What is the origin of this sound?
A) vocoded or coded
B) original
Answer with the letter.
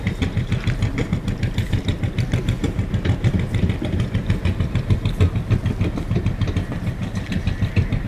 B